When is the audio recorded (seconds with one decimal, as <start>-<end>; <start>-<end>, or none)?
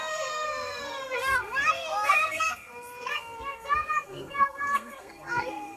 none